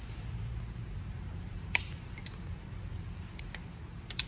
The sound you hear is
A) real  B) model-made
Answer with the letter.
B